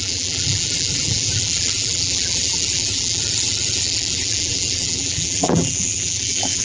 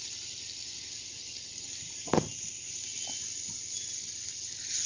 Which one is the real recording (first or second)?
second